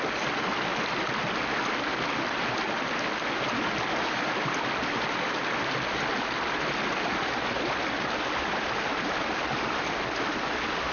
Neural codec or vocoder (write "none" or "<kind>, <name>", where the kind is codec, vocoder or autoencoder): none